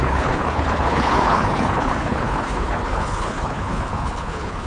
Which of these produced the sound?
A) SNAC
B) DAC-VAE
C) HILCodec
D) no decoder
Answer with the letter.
C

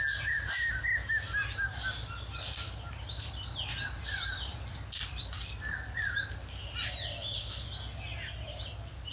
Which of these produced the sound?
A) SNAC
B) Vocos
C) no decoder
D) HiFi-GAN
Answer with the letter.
C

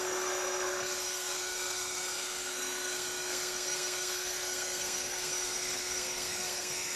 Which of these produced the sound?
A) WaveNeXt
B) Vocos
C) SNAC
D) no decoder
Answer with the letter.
C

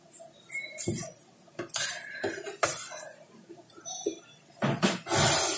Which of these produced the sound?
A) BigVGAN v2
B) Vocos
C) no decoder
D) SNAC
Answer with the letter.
A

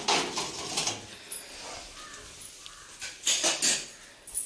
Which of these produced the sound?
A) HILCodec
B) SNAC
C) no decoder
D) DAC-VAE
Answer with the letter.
C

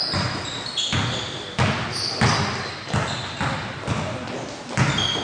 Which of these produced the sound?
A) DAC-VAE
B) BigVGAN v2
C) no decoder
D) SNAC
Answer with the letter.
C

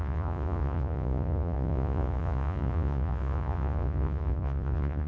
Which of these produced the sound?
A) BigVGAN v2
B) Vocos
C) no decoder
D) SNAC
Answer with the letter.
B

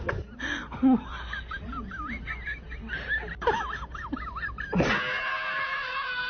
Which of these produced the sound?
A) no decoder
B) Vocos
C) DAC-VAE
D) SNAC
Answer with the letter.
A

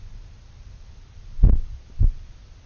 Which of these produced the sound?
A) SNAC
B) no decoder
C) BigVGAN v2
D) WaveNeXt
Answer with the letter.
B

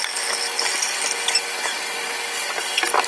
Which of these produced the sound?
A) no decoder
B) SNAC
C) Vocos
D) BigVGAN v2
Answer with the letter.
A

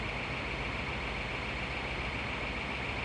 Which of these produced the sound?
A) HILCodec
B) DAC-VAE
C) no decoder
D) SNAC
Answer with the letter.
C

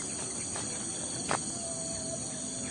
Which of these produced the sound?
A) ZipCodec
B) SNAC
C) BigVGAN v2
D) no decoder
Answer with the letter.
D